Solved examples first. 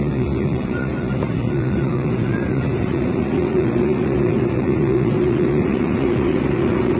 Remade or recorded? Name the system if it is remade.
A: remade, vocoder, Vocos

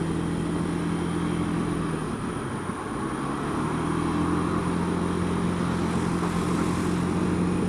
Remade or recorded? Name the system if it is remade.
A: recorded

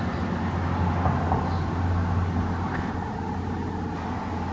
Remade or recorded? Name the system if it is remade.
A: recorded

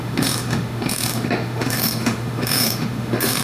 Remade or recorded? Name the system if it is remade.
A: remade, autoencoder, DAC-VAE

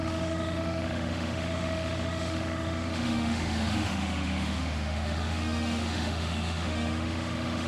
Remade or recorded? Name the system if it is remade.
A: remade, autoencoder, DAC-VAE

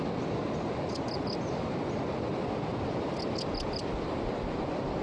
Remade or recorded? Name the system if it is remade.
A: recorded